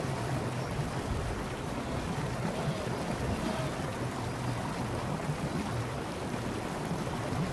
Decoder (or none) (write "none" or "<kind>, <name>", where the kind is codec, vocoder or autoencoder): none